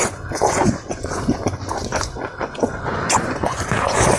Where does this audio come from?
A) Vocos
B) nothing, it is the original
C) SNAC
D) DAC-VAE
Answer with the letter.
A